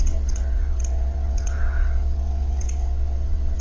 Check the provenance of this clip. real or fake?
fake